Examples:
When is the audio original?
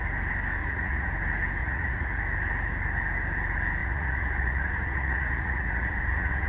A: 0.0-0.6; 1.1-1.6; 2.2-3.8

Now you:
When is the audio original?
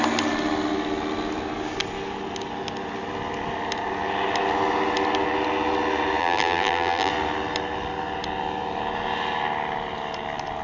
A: 0.0-6.2; 7.1-10.6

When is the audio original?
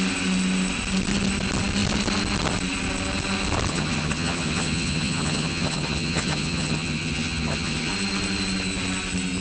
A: 0.0-3.7; 7.9-9.4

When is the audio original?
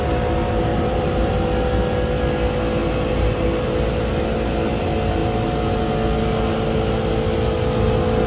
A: 0.0-0.7; 1.3-2.8; 3.5-8.3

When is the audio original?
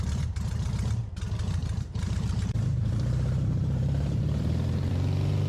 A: 0.0-1.6; 4.9-5.5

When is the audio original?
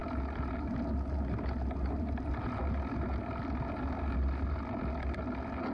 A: 0.0-5.7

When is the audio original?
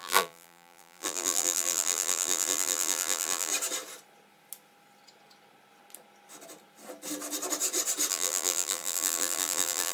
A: 3.5-8.1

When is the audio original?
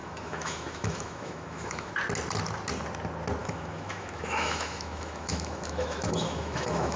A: 1.9-3.4